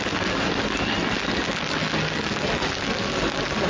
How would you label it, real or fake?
real